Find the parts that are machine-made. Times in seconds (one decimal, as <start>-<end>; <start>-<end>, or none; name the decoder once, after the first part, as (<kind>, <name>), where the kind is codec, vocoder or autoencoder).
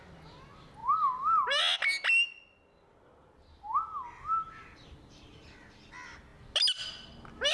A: none